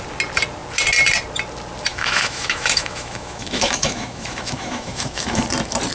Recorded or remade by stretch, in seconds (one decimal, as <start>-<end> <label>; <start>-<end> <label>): 0.0-1.9 recorded; 1.9-5.4 remade; 5.4-5.9 recorded